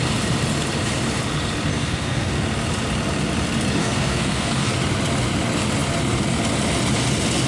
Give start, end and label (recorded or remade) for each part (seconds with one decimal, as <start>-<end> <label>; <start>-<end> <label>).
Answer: 0.0-1.7 recorded; 1.7-2.3 remade; 2.3-3.8 recorded; 3.8-4.7 remade; 4.7-7.5 recorded